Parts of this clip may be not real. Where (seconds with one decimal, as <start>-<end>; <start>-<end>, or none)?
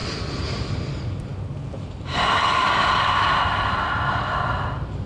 none